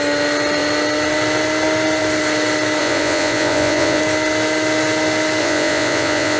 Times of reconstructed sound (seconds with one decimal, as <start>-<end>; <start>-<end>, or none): 2.8-4.0; 5.4-6.4